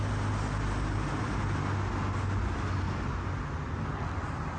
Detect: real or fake real